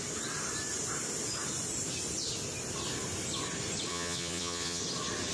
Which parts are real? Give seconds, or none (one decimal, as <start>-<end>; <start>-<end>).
0.0-3.9; 4.8-5.3